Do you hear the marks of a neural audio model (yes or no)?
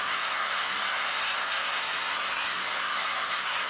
yes